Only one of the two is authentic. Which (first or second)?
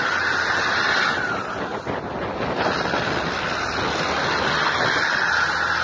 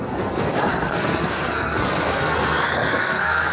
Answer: first